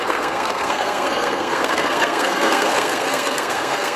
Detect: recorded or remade remade